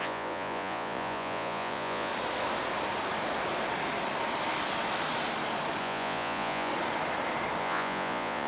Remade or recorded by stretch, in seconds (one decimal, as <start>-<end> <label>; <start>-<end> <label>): 0.0-2.1 remade; 2.1-5.8 recorded; 5.8-6.7 remade; 6.7-7.6 recorded; 7.6-8.5 remade